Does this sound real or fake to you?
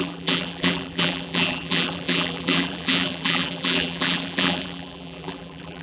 fake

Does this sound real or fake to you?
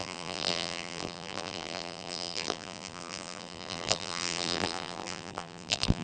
fake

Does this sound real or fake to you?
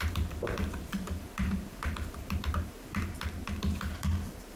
fake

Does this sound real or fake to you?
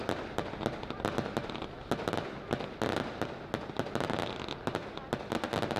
real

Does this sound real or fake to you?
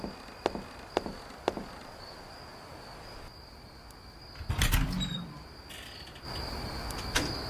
real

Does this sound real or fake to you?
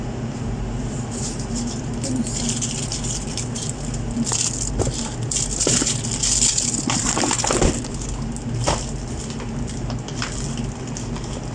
real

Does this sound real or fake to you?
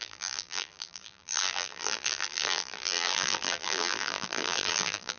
fake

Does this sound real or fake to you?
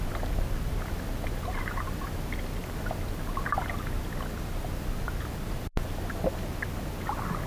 real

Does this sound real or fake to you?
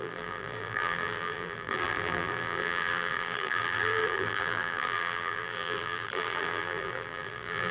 fake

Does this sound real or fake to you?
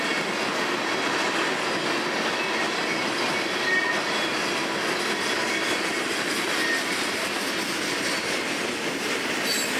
real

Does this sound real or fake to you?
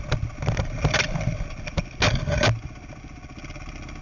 real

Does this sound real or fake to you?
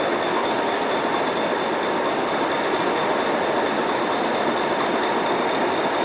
real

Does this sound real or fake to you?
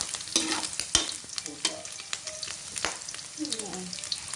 real